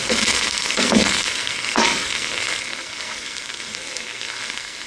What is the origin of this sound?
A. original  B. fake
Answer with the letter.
B